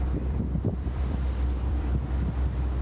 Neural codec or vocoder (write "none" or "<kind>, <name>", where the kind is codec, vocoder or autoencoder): vocoder, BigVGAN v2